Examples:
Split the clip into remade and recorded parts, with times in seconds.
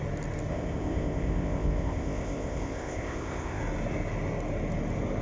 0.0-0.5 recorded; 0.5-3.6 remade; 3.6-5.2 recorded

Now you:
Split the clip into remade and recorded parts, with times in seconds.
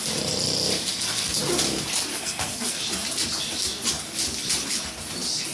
0.0-0.9 recorded; 0.9-1.4 remade; 1.4-2.1 recorded; 2.1-2.8 remade; 2.8-5.5 recorded